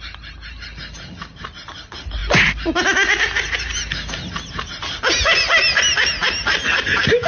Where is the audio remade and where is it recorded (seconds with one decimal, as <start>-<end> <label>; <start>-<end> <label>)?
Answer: 0.0-7.3 recorded